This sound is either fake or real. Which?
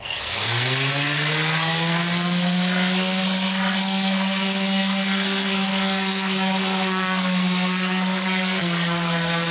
fake